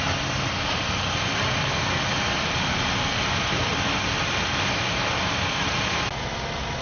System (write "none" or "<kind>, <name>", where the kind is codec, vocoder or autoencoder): none